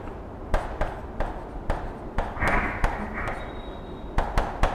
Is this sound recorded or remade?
recorded